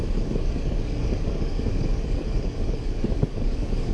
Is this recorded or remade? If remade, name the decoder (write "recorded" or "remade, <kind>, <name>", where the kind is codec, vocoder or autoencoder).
remade, codec, DAC